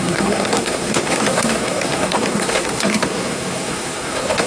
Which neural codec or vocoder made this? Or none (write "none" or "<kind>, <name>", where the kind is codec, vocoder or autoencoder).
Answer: codec, SNAC